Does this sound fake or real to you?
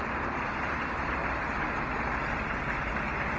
real